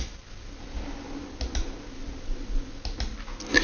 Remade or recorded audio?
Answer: recorded